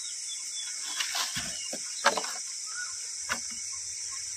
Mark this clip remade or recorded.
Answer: recorded